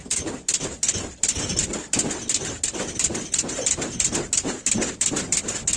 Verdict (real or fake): real